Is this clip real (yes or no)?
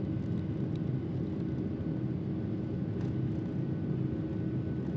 yes